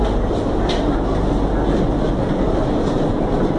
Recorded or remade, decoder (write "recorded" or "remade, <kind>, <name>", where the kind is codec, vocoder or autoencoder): recorded